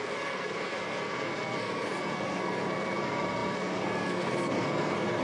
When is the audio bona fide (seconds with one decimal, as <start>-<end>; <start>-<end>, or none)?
none